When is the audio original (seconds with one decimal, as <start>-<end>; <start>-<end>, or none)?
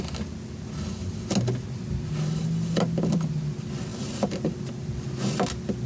0.0-5.9